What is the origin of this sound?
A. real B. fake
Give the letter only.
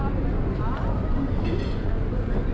A